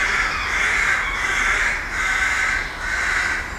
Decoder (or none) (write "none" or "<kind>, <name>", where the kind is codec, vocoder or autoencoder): none